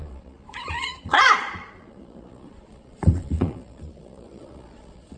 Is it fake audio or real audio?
fake